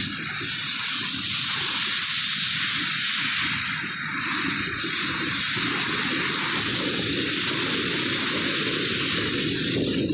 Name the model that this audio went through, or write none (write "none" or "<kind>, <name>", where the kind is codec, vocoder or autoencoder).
none